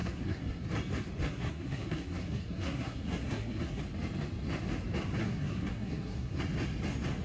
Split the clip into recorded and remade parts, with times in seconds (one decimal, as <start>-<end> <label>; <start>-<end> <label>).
0.0-0.6 remade; 0.6-1.2 recorded; 1.2-3.8 remade; 3.8-5.2 recorded; 5.2-6.4 remade; 6.4-7.2 recorded